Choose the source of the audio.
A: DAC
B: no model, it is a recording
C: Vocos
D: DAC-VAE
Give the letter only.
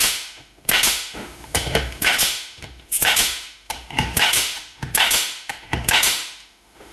D